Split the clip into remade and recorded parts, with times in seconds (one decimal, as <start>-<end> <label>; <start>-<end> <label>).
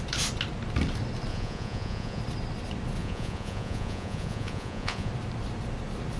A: 0.0-1.3 recorded; 1.3-2.2 remade; 2.2-3.0 recorded; 3.0-5.1 remade; 5.1-6.2 recorded